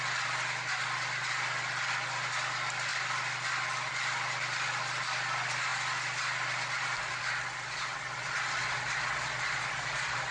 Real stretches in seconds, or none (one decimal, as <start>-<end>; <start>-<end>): 0.0-10.3